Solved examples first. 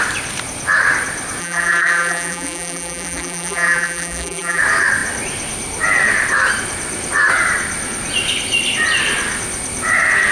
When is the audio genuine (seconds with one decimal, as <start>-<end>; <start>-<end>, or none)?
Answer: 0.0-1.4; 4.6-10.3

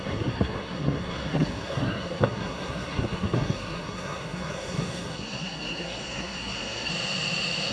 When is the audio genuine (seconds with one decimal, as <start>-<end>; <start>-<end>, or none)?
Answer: 6.9-7.7

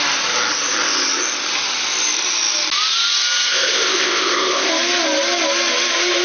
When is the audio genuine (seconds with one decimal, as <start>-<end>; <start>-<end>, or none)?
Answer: 0.0-3.5; 4.7-6.2

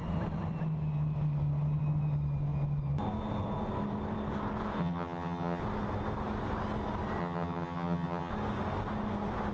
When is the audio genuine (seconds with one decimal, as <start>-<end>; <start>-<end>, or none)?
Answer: 0.0-4.8; 5.6-7.2; 8.3-9.5